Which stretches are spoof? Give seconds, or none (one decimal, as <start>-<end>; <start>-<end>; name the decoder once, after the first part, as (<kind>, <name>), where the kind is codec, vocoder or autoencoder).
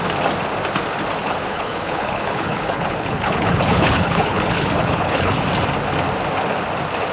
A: 1.2-5.4 (codec, HILCodec)